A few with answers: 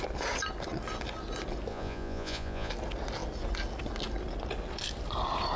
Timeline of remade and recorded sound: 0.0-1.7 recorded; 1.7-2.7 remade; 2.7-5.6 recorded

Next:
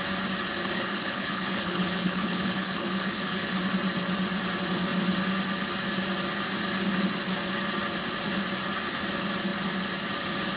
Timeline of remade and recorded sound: 0.0-0.6 recorded; 0.6-3.6 remade; 3.6-10.6 recorded

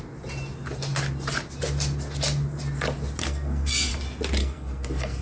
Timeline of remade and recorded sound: 0.0-3.2 recorded; 3.2-3.9 remade; 3.9-4.4 recorded; 4.4-5.2 remade

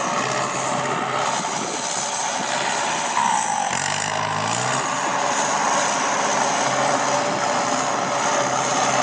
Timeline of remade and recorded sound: 0.0-9.0 recorded

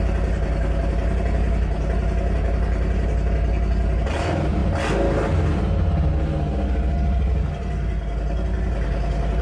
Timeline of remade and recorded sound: 0.0-9.4 recorded

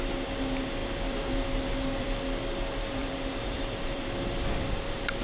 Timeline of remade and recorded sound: 0.0-0.8 recorded; 0.8-2.4 remade; 2.4-3.0 recorded; 3.0-5.2 remade

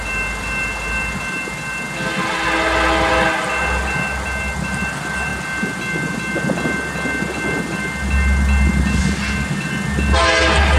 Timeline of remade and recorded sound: 0.0-10.8 recorded